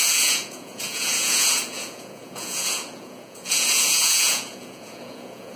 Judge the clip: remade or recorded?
remade